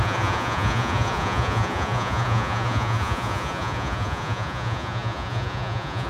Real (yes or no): no